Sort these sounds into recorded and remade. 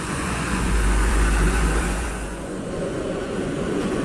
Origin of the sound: remade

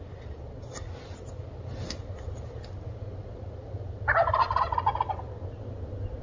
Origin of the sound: recorded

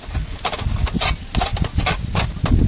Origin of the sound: recorded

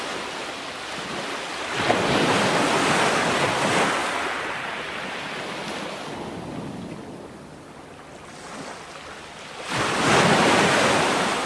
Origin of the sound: recorded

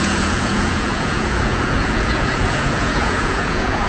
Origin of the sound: remade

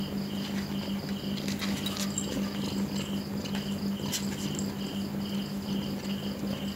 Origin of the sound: recorded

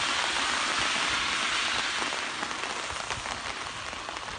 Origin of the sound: recorded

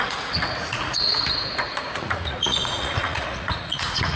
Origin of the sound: remade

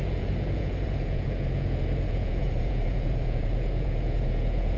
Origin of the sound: remade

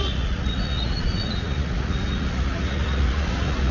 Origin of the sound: remade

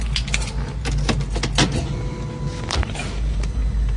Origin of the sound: recorded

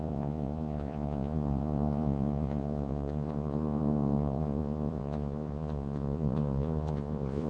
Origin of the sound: remade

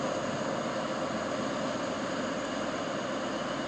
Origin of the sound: recorded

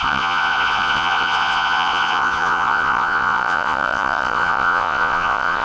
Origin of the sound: remade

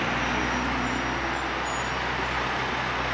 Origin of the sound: recorded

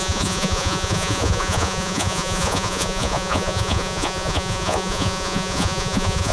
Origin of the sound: remade